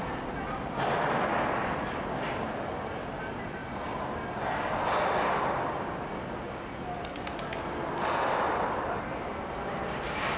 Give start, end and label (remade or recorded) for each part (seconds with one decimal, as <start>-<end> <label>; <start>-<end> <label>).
0.0-10.4 recorded